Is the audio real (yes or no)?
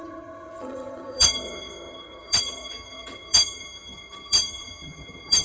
no